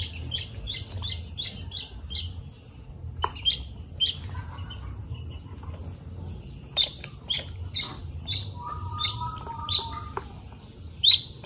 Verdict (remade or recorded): recorded